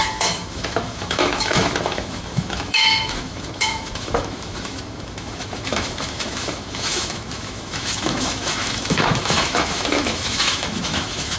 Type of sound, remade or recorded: remade